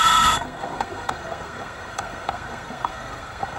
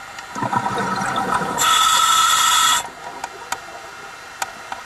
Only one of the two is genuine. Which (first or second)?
second